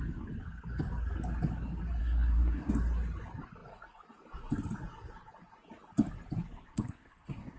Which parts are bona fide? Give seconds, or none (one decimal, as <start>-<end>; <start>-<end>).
0.0-2.0; 2.7-6.7